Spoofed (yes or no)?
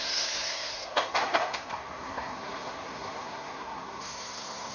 yes